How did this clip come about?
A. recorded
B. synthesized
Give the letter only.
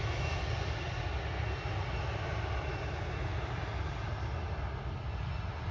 A